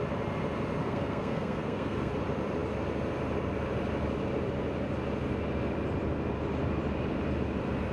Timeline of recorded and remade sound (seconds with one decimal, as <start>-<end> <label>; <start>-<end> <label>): 0.0-0.8 recorded; 0.8-2.1 remade; 2.1-7.9 recorded